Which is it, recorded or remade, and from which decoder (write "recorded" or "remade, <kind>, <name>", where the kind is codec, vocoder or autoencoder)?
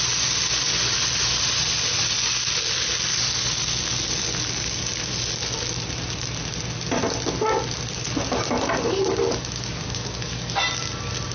recorded